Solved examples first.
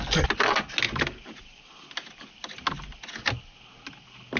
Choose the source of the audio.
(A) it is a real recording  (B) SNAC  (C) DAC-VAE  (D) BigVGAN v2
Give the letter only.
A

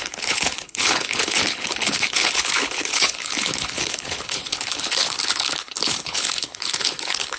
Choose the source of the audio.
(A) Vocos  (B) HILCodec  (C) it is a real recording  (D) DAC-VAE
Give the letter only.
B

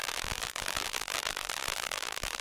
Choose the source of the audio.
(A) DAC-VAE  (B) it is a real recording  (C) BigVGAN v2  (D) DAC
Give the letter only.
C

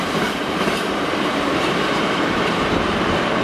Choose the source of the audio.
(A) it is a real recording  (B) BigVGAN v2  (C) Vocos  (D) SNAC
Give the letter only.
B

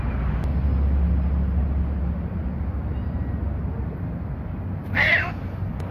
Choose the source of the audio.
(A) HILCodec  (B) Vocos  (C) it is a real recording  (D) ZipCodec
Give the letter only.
C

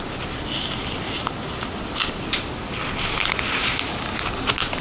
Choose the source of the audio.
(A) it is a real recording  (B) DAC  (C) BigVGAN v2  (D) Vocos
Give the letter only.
A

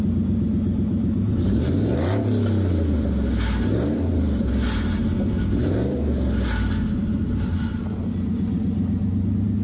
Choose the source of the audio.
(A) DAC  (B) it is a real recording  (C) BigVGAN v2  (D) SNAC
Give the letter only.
C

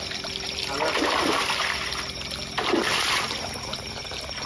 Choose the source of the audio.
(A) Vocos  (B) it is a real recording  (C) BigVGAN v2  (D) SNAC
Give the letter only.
B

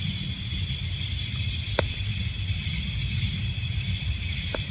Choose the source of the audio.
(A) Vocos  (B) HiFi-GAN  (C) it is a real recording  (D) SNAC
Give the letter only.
C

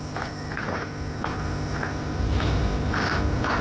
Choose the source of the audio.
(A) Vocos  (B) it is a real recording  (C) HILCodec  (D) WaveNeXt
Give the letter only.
B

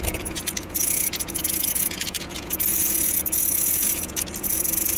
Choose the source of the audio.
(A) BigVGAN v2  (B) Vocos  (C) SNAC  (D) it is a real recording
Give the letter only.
B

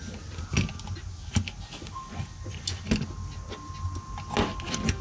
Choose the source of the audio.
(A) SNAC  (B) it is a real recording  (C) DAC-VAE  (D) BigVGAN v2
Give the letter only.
B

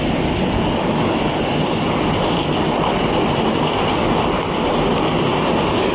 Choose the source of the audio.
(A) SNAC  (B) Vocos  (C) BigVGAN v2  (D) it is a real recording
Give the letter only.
D